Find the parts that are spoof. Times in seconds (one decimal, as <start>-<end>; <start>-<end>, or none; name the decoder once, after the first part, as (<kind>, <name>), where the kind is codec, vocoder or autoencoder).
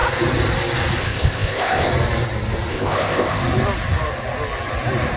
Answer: 1.0-1.9 (codec, ZipCodec); 2.7-3.4